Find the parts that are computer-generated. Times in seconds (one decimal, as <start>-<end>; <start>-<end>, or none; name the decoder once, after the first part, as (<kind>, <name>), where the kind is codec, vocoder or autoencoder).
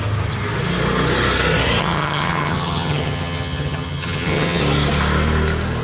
1.8-4.6 (vocoder, HiFi-GAN)